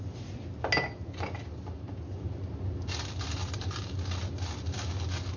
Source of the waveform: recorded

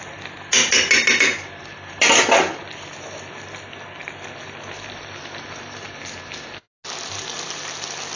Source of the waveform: recorded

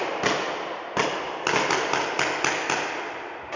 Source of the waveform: recorded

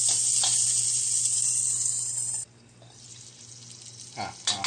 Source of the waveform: recorded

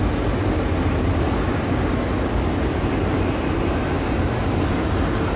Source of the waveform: recorded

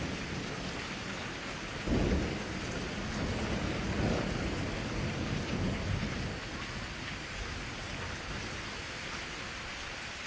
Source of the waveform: recorded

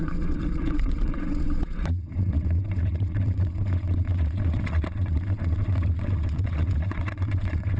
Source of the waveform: remade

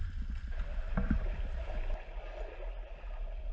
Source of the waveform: recorded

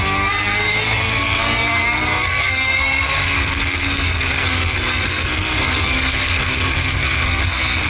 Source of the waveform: remade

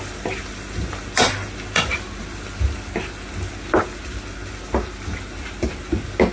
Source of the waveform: recorded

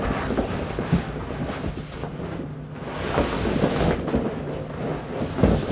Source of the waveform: recorded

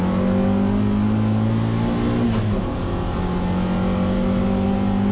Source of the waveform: recorded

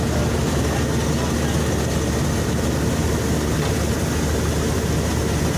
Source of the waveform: recorded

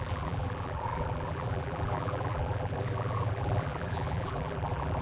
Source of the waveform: remade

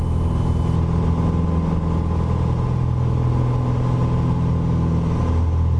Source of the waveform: recorded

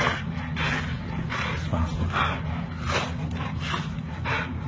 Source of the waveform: recorded